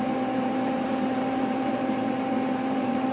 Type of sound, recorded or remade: remade